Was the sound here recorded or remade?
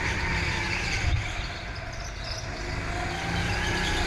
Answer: recorded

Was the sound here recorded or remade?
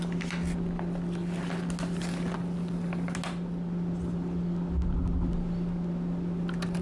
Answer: recorded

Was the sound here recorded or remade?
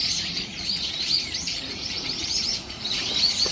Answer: remade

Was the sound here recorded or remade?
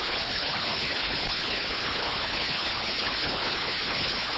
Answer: remade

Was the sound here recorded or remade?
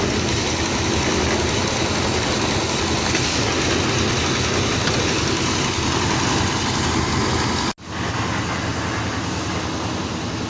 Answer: recorded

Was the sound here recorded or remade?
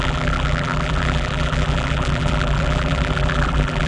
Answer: remade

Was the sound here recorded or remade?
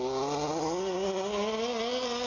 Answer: recorded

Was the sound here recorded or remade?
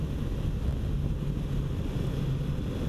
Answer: recorded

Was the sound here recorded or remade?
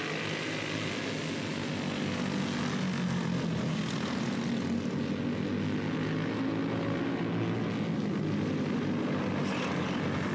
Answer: recorded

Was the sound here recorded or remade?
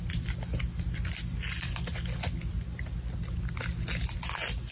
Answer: recorded